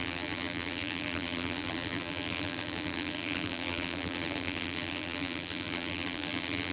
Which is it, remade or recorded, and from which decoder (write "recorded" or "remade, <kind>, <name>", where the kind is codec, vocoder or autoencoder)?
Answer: remade, vocoder, BigVGAN v2